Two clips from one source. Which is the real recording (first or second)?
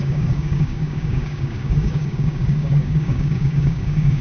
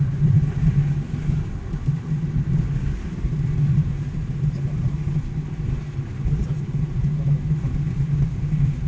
second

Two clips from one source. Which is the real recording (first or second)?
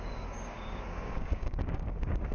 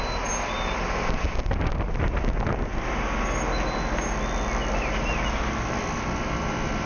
second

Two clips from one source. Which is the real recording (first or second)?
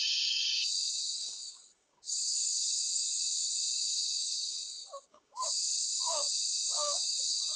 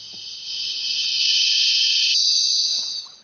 second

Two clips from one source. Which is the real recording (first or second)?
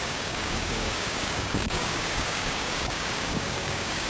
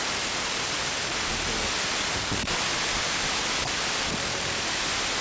second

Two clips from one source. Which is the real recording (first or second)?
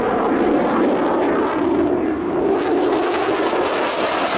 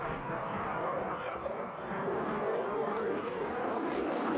first